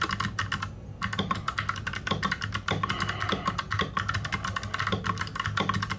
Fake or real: real